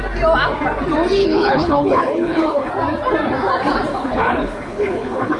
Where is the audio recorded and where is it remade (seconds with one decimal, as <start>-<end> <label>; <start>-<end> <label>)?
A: 0.0-1.2 recorded; 1.2-2.7 remade; 2.7-3.9 recorded; 3.9-5.4 remade